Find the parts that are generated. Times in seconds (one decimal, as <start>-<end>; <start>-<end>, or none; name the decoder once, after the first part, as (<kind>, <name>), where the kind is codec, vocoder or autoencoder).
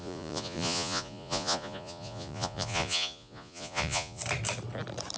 0.0-4.2 (vocoder, Vocos)